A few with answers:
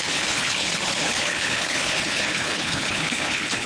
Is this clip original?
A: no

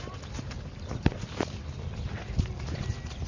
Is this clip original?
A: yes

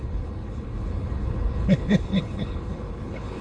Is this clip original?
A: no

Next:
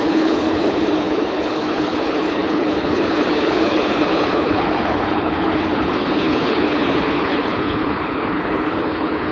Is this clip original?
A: no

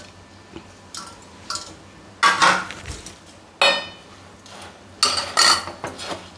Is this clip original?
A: yes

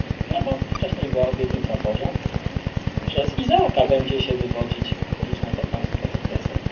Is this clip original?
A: yes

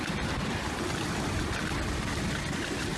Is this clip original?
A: yes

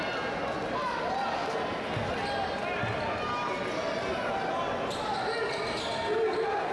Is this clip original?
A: yes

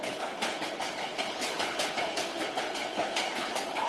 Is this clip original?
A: no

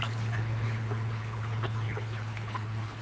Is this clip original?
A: no